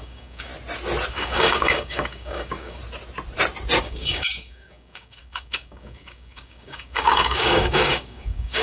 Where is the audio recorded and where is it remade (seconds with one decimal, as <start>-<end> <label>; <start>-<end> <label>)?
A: 0.0-0.5 remade; 0.5-1.1 recorded; 1.1-2.8 remade; 2.8-3.8 recorded; 3.8-8.6 remade